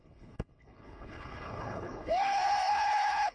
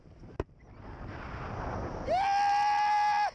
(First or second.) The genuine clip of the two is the second